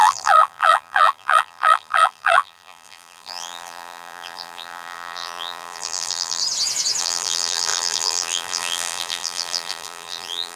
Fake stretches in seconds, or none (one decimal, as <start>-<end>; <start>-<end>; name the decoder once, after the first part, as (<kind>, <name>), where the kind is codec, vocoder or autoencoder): 0.0-6.4 (vocoder, BigVGAN v2); 7.0-10.6